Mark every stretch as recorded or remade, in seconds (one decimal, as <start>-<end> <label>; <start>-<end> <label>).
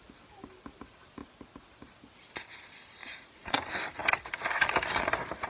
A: 0.0-3.0 recorded; 3.0-3.6 remade; 3.6-5.5 recorded